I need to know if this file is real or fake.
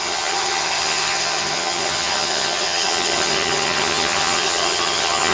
fake